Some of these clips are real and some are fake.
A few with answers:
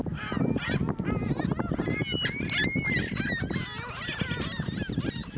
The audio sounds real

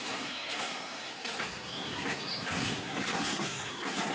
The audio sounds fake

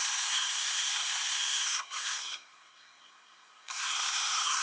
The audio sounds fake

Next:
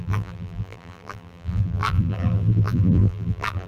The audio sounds fake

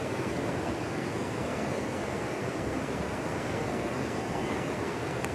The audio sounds fake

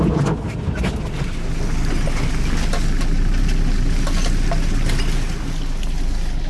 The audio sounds real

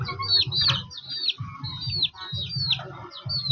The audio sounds real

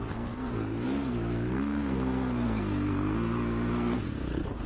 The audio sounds fake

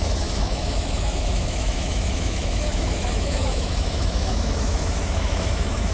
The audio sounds fake